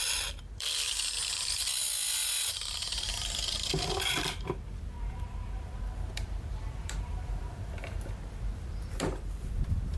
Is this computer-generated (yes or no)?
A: yes